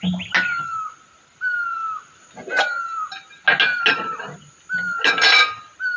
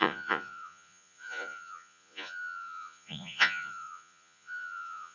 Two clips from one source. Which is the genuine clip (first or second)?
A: first